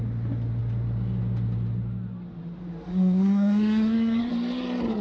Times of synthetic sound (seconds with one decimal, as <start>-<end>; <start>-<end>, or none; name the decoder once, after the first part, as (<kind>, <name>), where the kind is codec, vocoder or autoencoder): 2.9-4.3 (codec, SNAC)